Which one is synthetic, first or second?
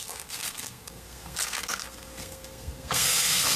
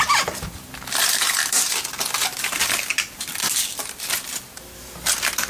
first